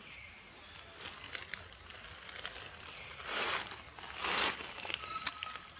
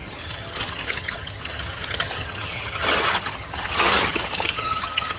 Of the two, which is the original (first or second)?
first